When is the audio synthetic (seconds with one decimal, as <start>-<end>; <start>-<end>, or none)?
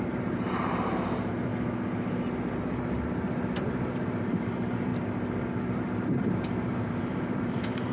0.0-1.5; 3.6-4.9; 5.8-7.9